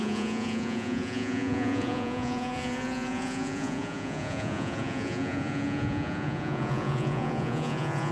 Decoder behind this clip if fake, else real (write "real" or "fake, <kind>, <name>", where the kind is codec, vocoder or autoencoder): fake, vocoder, Vocos